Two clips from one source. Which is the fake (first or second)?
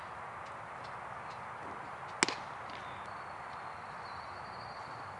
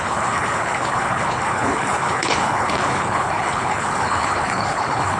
second